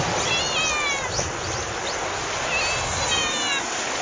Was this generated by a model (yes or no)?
no